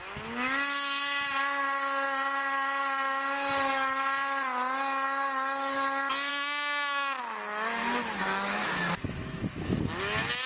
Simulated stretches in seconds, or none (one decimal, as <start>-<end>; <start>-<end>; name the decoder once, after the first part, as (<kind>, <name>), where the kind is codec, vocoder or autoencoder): 6.3-7.2 (autoencoder, DAC-VAE); 7.8-10.0